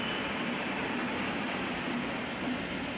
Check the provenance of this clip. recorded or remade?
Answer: recorded